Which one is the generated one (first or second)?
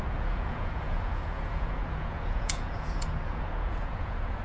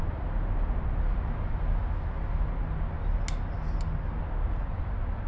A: first